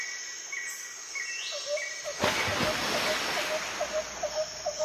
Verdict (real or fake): real